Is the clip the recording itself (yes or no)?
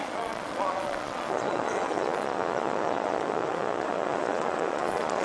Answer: no